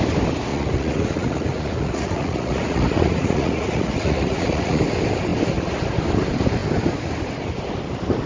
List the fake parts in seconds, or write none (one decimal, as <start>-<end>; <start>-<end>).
0.5-4.8